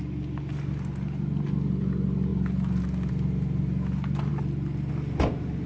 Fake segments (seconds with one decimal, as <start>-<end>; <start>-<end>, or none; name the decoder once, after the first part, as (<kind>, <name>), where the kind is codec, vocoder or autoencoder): none